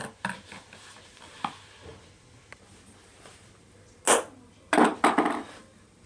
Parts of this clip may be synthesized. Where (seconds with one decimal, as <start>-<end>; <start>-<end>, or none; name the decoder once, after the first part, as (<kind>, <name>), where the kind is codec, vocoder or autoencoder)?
none